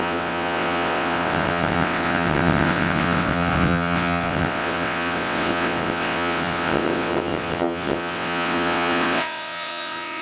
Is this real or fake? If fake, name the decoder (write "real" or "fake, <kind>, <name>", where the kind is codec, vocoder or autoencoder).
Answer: fake, vocoder, WaveNeXt